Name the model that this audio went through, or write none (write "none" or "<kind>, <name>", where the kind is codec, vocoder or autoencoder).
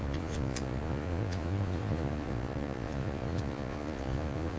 vocoder, Vocos